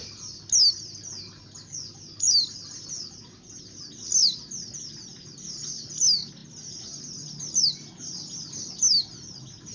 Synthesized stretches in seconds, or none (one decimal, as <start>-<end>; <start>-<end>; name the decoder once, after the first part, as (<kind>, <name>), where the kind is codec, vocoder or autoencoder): none